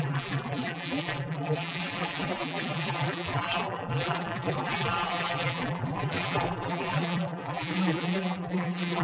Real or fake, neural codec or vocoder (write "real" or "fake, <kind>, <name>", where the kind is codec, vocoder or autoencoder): fake, vocoder, BigVGAN v2